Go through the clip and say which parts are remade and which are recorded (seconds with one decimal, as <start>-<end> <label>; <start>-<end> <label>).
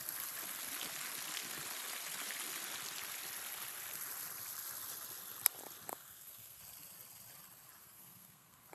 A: 0.0-5.9 recorded; 5.9-6.6 remade; 6.6-7.8 recorded; 7.8-8.7 remade